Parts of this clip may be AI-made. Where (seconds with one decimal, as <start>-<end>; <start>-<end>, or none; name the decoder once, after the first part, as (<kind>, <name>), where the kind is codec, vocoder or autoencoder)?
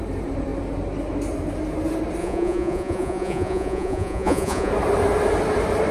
2.2-4.7 (vocoder, Vocos)